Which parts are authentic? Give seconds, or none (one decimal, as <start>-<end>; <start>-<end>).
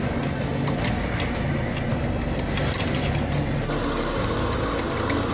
0.0-5.3